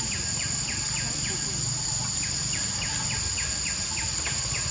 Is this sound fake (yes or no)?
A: no